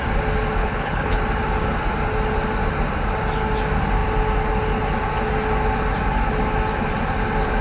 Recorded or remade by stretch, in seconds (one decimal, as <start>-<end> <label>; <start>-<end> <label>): 0.0-0.6 recorded; 0.6-1.2 remade; 1.2-7.6 recorded